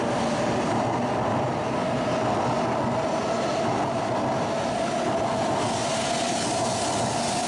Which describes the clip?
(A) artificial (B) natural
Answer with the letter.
B